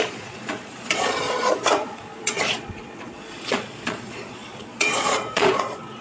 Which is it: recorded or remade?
remade